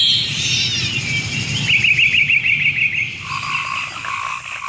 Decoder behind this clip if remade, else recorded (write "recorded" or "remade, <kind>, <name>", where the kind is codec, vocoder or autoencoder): recorded